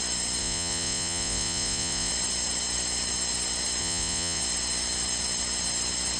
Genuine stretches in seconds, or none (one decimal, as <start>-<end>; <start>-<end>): 0.0-0.4; 2.1-3.8; 4.4-6.2